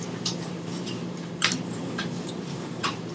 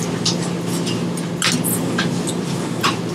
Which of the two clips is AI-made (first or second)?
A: first